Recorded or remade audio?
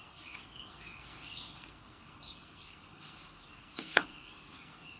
remade